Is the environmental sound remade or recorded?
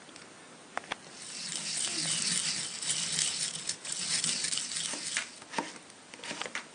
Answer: recorded